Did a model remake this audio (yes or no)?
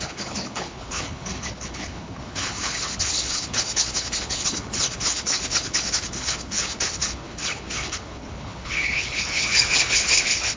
yes